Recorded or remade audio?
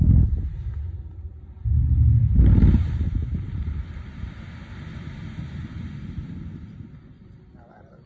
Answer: recorded